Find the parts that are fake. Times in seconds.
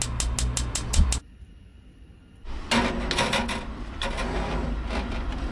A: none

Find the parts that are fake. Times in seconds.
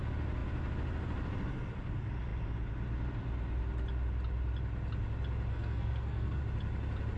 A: 5.5-6.4 (codec, SNAC)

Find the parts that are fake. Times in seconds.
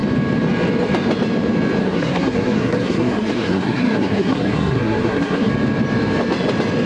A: 1.8-5.5 (codec, SNAC)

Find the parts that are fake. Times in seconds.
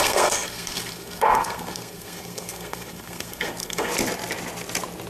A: 0.0-3.9 (codec, SNAC)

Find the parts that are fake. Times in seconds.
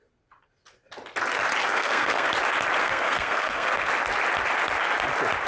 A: 1.6-2.3 (codec, SNAC); 2.8-3.9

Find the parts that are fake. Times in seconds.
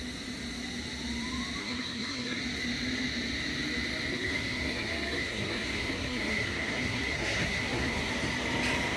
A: 1.6-2.4 (codec, SNAC); 4.1-8.1